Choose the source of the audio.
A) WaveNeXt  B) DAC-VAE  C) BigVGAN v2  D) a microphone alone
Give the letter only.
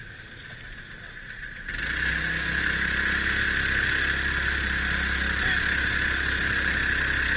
D